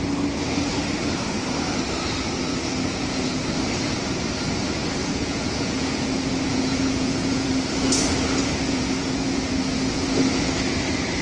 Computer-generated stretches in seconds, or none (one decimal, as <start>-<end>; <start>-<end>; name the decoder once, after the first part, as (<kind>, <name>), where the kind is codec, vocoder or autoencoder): 2.9-3.4 (vocoder, Vocos); 5.0-6.1; 6.5-7.5; 8.4-10.1